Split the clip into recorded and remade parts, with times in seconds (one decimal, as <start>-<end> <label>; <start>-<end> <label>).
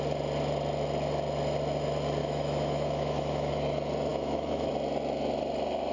0.0-2.2 recorded; 2.2-3.5 remade; 3.5-4.1 recorded; 4.1-4.7 remade; 4.7-5.9 recorded